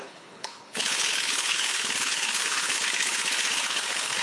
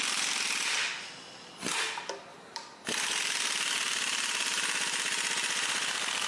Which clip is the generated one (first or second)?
first